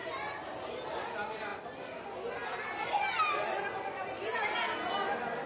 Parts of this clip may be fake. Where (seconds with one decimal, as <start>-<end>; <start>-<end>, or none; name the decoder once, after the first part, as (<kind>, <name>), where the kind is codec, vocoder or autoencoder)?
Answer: 0.0-0.6 (vocoder, BigVGAN v2)